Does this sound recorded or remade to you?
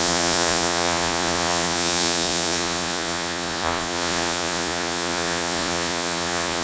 remade